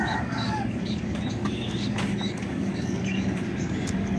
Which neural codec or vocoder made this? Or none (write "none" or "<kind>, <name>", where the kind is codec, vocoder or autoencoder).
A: codec, DAC